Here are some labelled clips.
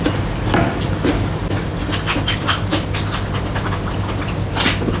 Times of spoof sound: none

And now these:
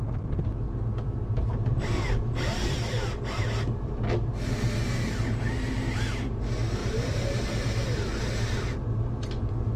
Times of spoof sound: 1.2-3.4 (vocoder, BigVGAN v2); 6.8-9.8

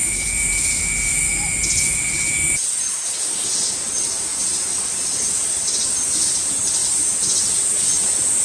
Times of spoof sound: none